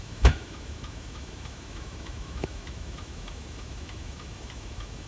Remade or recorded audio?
remade